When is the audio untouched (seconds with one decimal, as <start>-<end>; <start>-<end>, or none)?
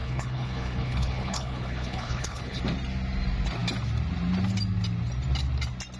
2.6-6.0